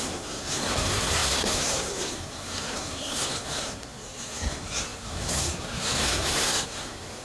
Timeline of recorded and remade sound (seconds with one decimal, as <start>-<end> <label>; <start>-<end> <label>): 0.0-7.2 remade